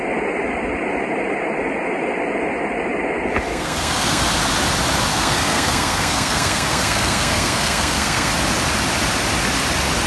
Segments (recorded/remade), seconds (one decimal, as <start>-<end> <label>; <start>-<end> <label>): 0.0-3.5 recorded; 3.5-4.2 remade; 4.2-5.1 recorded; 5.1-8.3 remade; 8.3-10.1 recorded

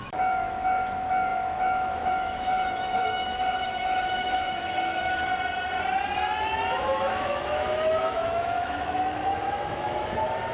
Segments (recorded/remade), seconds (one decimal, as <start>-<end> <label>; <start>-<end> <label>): 0.0-5.3 remade; 5.3-6.7 recorded; 6.7-10.5 remade

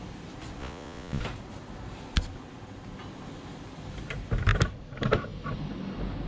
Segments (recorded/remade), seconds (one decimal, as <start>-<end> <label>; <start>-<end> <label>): 0.0-0.6 recorded; 0.6-1.2 remade; 1.2-6.3 recorded

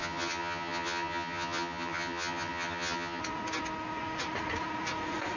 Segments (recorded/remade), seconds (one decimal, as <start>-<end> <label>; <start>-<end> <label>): 0.0-3.2 remade; 3.2-5.4 recorded

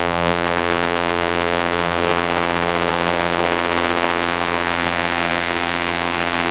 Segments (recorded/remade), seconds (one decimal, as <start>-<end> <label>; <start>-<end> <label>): 0.0-6.5 remade

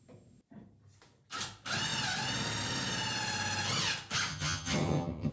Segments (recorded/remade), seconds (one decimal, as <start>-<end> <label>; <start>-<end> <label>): 0.0-4.3 recorded; 4.3-5.3 remade